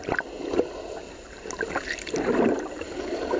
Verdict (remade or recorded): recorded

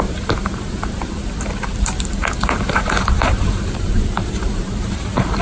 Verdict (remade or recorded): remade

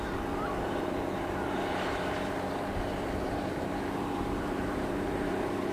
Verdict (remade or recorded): remade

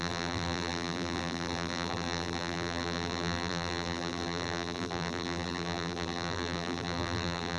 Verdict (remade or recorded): remade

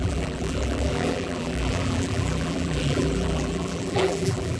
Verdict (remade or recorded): remade